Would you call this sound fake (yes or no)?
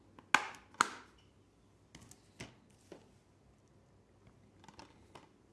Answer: no